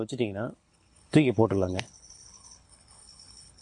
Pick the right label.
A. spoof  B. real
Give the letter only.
A